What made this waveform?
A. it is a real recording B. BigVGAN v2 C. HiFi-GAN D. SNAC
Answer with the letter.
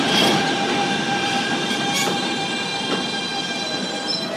B